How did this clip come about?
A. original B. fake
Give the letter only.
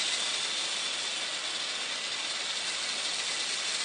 A